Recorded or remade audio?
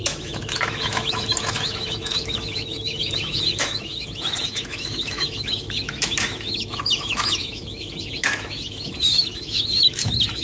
remade